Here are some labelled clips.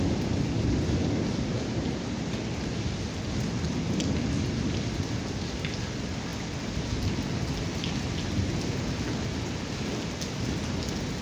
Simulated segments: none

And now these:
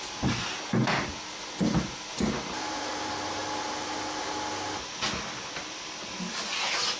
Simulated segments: 0.0-0.8 (vocoder, BigVGAN v2); 2.1-3.4